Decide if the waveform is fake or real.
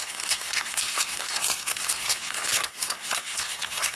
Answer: fake